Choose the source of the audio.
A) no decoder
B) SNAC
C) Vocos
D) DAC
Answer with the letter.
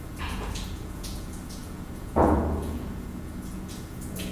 C